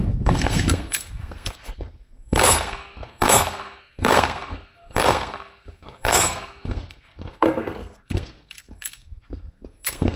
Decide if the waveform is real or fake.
fake